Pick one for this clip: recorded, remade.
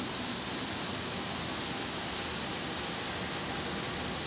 recorded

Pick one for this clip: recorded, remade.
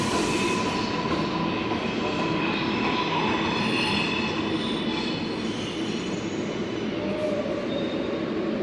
recorded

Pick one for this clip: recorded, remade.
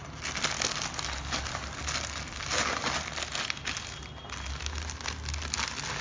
recorded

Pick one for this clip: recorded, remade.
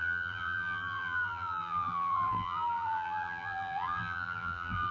remade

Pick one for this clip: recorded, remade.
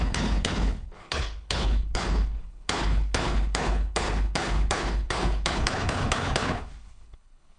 remade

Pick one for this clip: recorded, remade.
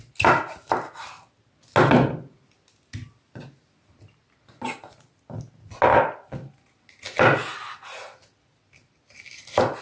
recorded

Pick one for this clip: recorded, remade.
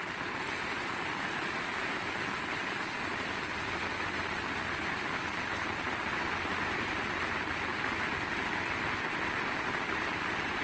recorded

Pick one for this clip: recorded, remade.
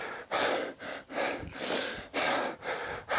recorded